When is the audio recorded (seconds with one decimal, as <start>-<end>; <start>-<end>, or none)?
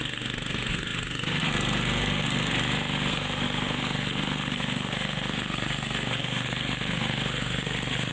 2.5-3.1